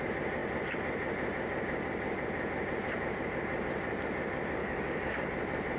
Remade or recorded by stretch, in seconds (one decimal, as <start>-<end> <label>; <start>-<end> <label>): 0.0-4.6 recorded; 4.6-5.3 remade; 5.3-5.8 recorded